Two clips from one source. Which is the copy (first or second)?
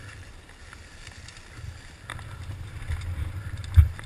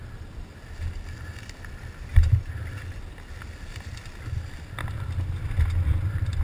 first